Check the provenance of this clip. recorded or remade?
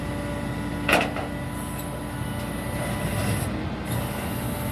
recorded